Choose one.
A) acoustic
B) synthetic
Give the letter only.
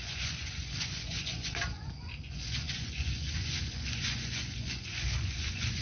B